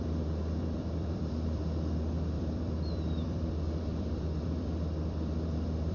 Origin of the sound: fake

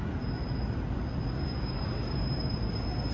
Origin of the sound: real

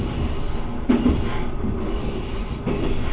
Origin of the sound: real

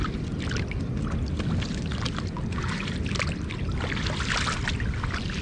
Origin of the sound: real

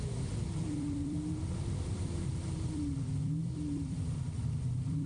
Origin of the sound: fake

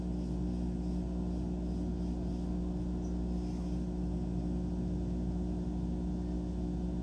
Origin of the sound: real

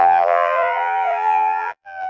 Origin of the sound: fake